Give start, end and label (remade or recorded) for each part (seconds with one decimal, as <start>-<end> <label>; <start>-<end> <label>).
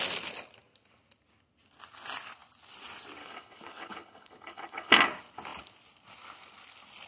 0.0-3.2 recorded; 3.2-4.9 remade; 4.9-7.1 recorded